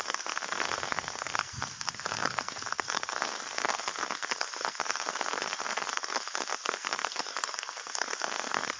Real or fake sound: fake